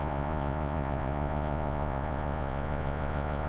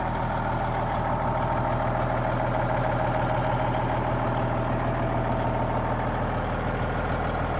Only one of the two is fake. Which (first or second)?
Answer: first